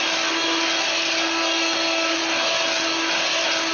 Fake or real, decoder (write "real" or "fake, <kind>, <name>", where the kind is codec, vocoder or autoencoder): real